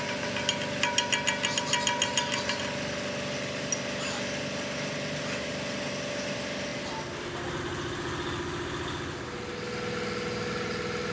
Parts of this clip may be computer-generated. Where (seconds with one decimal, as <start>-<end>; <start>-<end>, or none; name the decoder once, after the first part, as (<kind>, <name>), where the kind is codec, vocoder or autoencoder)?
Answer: none